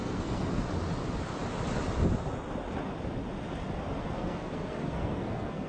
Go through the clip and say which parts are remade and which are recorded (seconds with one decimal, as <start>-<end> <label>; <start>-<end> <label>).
0.0-0.7 remade; 0.7-4.0 recorded; 4.0-5.7 remade